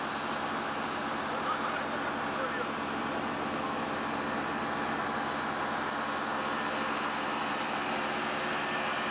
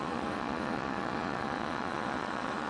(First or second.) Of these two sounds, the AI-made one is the second